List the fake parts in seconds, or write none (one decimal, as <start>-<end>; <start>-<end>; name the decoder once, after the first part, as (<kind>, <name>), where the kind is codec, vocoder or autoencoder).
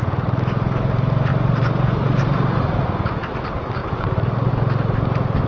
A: 1.3-2.6 (vocoder, BigVGAN v2); 3.8-4.5